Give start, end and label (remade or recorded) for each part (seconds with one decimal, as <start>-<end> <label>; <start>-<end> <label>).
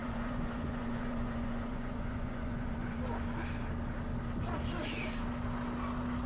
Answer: 0.0-3.0 remade; 3.0-6.3 recorded